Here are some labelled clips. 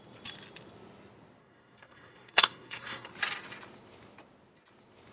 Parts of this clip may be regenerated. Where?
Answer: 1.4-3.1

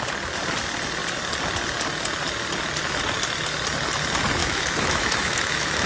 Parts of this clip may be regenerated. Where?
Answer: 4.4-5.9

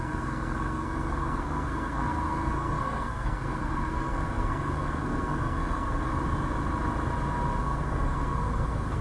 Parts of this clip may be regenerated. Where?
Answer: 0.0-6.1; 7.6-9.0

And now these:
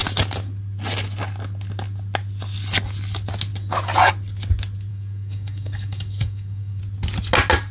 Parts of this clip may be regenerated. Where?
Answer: 4.9-6.8

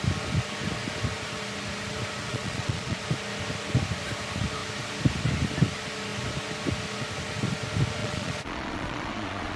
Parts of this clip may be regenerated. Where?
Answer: 2.3-3.0; 8.0-9.6